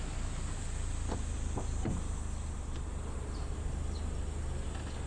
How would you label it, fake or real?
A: real